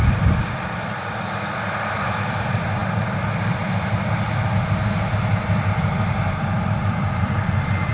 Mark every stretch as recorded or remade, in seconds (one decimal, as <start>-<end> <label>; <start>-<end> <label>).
0.0-2.8 remade; 2.8-6.3 recorded; 6.3-7.9 remade